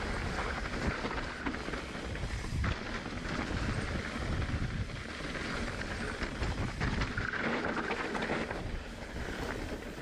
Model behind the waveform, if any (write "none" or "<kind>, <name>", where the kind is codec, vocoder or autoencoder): none